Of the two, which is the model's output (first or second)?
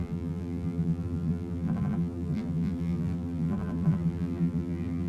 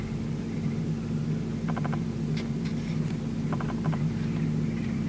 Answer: first